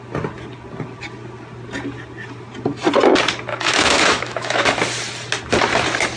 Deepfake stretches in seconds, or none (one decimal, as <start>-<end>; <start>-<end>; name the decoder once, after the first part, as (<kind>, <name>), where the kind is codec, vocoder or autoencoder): 3.5-4.7 (autoencoder, DAC-VAE)